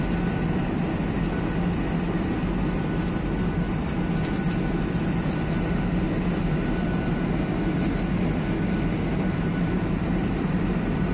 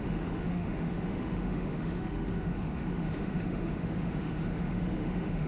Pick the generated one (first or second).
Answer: second